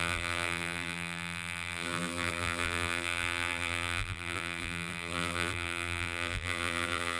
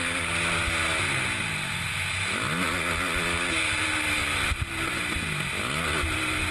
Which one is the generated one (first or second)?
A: first